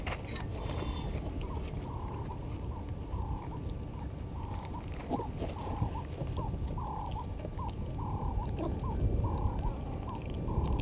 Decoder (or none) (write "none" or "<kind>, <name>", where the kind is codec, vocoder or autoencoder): none